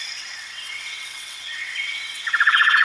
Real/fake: fake